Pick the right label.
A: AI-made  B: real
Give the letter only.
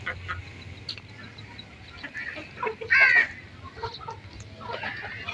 B